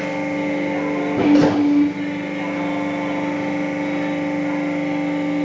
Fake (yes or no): no